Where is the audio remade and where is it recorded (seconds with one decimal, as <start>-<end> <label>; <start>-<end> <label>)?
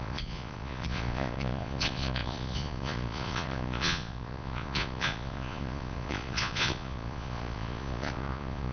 0.0-8.7 remade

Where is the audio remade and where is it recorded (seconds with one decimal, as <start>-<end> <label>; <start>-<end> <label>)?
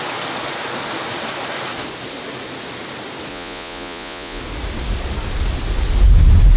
0.0-3.3 recorded; 3.3-4.4 remade; 4.4-6.6 recorded